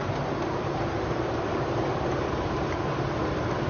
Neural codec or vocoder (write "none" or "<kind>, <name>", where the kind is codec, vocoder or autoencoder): vocoder, BigVGAN v2